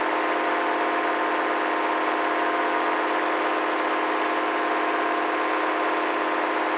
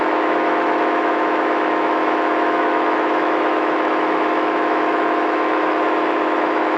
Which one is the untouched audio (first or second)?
first